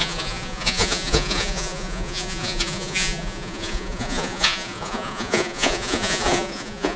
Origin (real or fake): fake